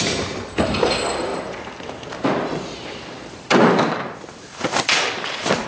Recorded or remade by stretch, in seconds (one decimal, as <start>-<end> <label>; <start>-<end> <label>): 0.0-5.7 remade